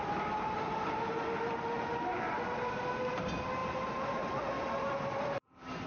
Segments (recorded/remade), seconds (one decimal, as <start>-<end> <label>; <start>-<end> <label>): 0.0-5.9 recorded